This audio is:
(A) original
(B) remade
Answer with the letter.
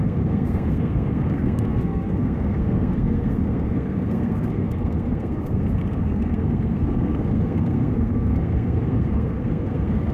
B